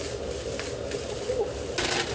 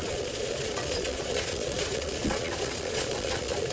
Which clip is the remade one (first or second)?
second